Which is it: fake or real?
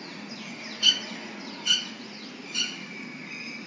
fake